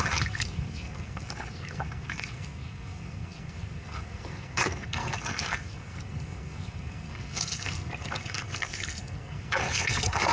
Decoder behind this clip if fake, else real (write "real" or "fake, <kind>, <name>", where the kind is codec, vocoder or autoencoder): fake, codec, SNAC